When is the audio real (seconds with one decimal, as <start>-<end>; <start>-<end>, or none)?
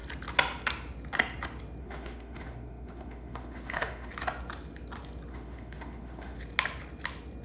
0.0-1.8; 4.1-5.3; 6.4-7.4